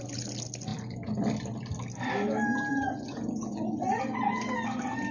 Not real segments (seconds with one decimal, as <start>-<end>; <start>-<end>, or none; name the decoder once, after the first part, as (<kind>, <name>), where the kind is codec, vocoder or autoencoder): 2.7-4.0 (vocoder, Vocos)